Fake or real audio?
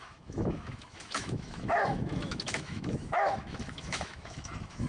fake